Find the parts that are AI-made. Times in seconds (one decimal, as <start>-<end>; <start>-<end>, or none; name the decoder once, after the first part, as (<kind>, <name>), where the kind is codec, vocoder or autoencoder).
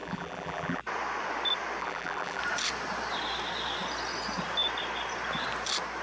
0.0-0.8 (vocoder, BigVGAN v2); 1.8-2.4